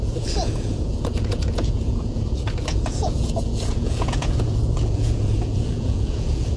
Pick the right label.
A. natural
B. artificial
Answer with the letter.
B